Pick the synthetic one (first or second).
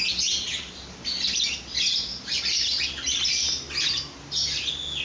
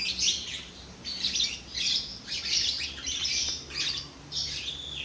second